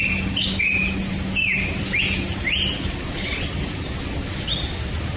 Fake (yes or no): no